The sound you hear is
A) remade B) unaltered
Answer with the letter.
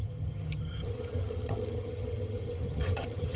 A